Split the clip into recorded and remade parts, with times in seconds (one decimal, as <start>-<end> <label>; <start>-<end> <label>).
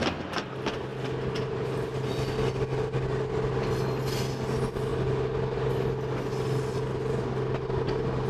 0.0-8.3 recorded